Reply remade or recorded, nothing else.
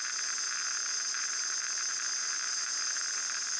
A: recorded